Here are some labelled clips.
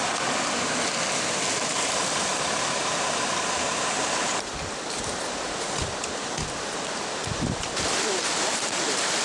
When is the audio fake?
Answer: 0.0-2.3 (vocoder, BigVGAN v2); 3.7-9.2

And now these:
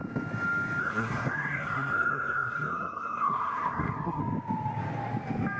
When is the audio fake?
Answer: 0.8-4.2 (codec, SNAC)